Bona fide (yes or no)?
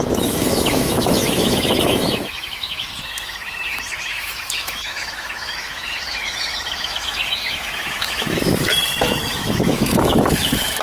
no